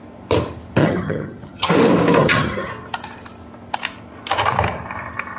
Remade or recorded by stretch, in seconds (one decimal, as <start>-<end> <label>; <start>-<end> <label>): 0.0-0.8 recorded; 0.8-1.7 remade; 1.7-2.2 recorded; 2.2-2.7 remade; 2.7-5.4 recorded